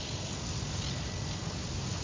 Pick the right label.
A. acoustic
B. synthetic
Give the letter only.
A